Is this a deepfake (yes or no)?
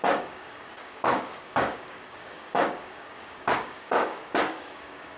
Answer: yes